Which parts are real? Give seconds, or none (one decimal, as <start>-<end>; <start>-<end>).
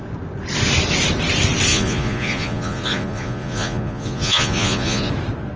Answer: 0.0-1.7; 5.1-5.6